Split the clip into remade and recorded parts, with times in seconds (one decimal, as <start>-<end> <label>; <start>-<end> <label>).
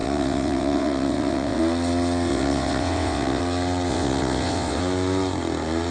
0.0-1.6 remade; 1.6-2.3 recorded; 2.3-3.4 remade; 3.4-3.9 recorded; 3.9-4.8 remade; 4.8-5.9 recorded